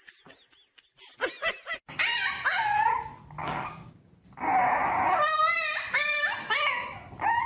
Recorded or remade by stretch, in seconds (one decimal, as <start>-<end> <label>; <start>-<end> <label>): 0.0-3.4 recorded; 3.4-4.1 remade; 4.1-7.5 recorded